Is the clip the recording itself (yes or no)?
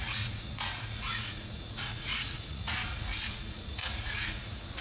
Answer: no